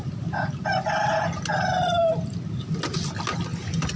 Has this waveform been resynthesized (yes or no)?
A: no